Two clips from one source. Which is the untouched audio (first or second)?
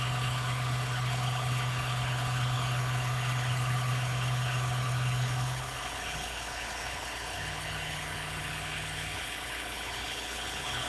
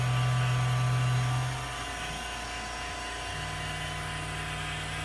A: second